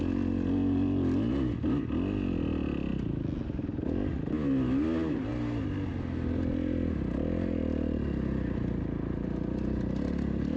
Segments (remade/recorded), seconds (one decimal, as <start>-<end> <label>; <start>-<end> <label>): 0.0-10.6 recorded